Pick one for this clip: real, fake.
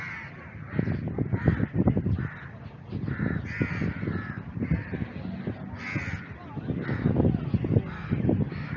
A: real